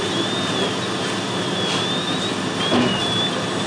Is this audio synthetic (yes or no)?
no